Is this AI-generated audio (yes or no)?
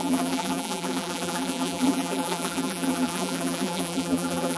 yes